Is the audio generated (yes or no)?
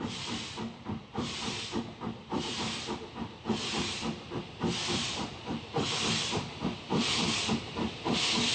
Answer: yes